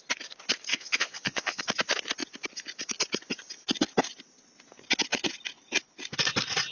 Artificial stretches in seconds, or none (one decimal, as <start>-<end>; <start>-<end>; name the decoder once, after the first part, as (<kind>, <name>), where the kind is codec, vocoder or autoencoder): 0.7-1.6 (vocoder, Vocos)

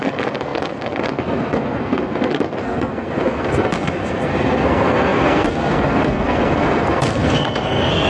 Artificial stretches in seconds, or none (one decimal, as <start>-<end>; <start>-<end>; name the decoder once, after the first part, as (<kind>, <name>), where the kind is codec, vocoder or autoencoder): 0.0-8.1 (codec, SNAC)

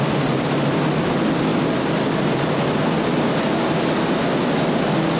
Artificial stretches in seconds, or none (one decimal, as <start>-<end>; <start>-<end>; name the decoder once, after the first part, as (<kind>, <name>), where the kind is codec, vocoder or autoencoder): none